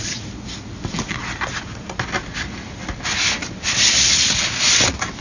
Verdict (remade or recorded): recorded